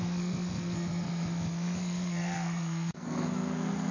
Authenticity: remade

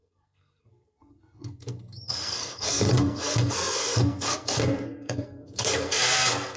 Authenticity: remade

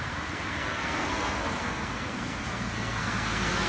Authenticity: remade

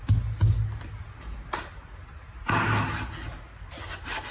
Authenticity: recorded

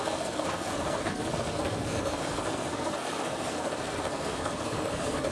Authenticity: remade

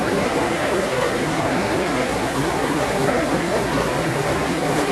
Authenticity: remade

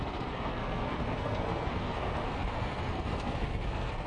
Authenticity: remade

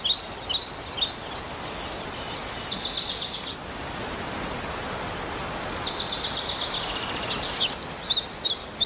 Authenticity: recorded